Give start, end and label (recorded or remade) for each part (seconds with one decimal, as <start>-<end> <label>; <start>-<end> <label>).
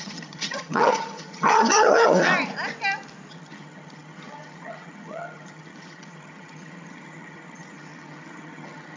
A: 0.0-2.3 remade; 2.3-3.3 recorded; 3.3-9.0 remade